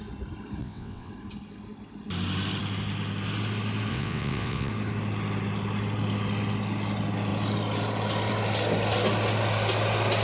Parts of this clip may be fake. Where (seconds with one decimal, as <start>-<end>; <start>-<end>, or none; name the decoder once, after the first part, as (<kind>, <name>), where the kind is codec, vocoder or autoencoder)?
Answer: 0.6-1.1 (vocoder, WaveNeXt); 3.9-4.7